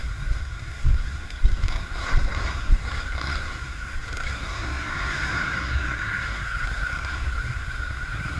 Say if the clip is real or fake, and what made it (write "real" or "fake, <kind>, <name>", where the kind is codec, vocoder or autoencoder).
fake, codec, SNAC